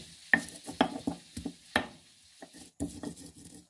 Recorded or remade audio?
recorded